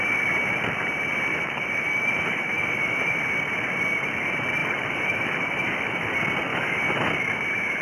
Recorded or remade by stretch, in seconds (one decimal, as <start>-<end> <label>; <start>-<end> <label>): 0.0-1.3 recorded; 1.3-3.1 remade; 3.1-4.6 recorded; 4.6-6.1 remade; 6.1-6.5 recorded; 6.5-7.1 remade; 7.1-7.8 recorded